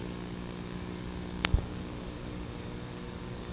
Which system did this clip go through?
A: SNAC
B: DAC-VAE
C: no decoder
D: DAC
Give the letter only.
D